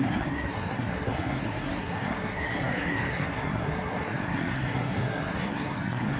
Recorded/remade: remade